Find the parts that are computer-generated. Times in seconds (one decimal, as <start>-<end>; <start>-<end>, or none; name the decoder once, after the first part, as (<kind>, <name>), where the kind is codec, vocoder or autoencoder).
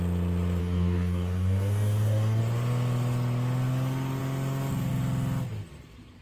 0.6-2.4 (codec, DAC)